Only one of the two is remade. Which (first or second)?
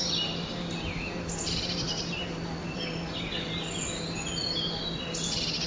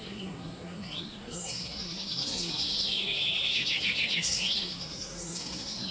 second